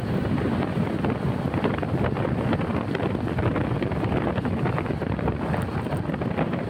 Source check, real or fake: real